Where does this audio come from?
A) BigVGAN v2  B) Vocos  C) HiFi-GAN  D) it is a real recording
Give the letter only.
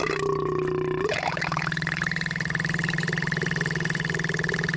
A